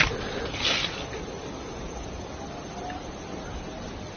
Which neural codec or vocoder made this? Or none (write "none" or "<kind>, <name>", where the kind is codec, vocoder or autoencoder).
none